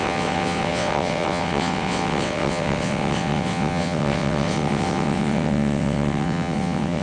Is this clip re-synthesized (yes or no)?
yes